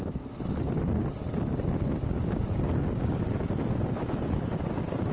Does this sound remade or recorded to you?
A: recorded